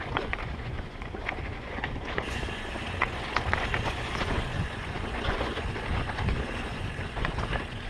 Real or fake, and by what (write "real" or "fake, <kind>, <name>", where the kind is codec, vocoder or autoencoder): fake, vocoder, Vocos